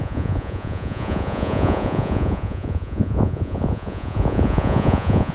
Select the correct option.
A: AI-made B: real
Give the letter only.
A